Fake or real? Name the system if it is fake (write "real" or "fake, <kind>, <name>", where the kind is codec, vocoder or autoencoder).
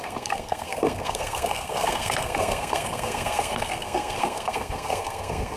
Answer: fake, codec, SNAC